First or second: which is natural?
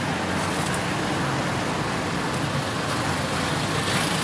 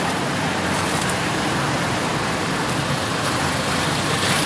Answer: first